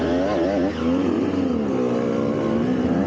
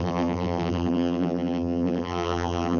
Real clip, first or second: first